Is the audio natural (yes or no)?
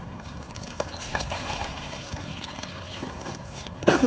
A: no